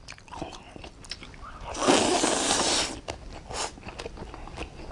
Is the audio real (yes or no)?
yes